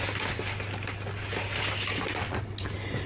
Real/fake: real